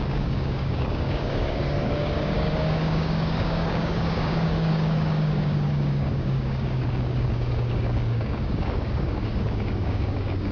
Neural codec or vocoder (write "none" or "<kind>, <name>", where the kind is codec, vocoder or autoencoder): codec, DAC